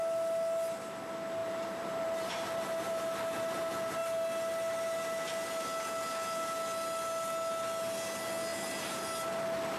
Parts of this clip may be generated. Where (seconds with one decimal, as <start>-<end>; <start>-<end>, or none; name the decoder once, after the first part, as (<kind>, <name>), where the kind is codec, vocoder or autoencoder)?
1.4-3.0 (vocoder, BigVGAN v2); 8.5-9.4